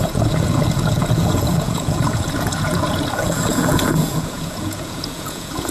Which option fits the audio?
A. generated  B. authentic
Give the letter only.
A